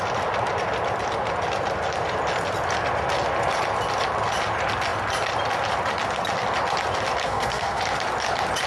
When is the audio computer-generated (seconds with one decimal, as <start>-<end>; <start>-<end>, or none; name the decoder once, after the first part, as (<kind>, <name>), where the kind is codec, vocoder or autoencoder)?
7.2-7.8 (codec, SNAC)